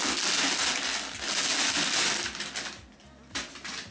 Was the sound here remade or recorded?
recorded